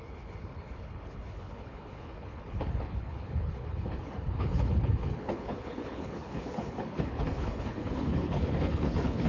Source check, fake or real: fake